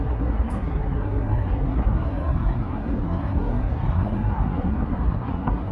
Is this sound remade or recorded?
remade